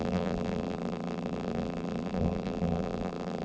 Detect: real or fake fake